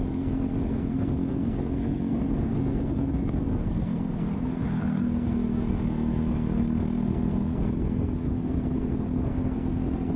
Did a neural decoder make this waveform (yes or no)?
yes